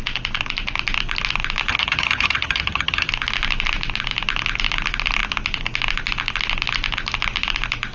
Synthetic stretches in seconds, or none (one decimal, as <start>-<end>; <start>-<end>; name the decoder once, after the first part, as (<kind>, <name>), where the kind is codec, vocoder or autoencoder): 1.7-3.1 (vocoder, HiFi-GAN)